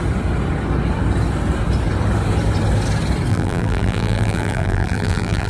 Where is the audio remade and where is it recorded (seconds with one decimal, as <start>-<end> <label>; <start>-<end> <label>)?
0.0-3.3 recorded; 3.3-5.5 remade

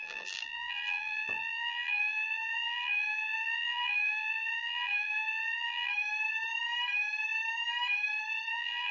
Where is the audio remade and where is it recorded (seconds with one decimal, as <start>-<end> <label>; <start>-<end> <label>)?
0.0-5.9 remade; 5.9-8.5 recorded; 8.5-8.9 remade

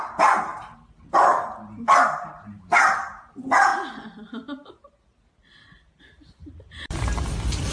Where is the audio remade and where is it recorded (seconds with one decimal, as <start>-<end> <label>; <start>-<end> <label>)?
0.0-6.4 recorded; 6.4-7.2 remade; 7.2-7.7 recorded

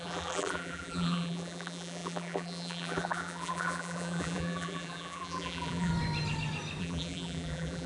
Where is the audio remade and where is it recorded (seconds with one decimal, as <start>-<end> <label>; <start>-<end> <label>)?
0.0-5.9 remade; 5.9-6.8 recorded; 6.8-7.9 remade

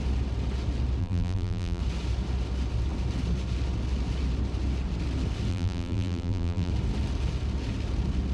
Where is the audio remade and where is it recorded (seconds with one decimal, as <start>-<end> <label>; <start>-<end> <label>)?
0.0-1.0 recorded; 1.0-1.8 remade; 1.8-5.5 recorded; 5.5-6.7 remade; 6.7-8.3 recorded

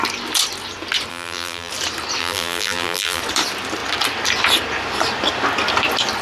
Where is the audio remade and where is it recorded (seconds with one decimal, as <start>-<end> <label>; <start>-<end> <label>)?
0.0-1.1 recorded; 1.1-1.7 remade; 1.7-2.2 recorded; 2.2-3.2 remade; 3.2-6.2 recorded

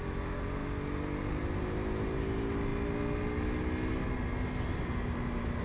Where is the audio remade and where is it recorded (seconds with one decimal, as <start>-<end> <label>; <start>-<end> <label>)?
0.0-5.6 recorded